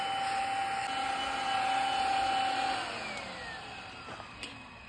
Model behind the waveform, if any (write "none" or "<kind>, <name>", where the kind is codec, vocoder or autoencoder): none